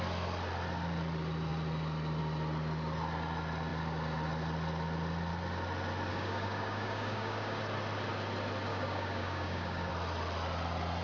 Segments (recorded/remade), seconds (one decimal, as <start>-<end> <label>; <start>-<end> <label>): 0.0-6.1 recorded; 6.1-7.6 remade; 7.6-8.7 recorded; 8.7-9.9 remade; 9.9-11.0 recorded